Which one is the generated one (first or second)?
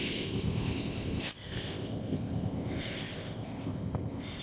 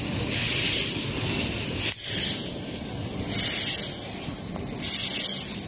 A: first